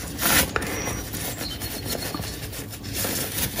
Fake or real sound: real